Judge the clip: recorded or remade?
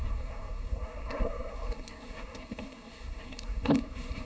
remade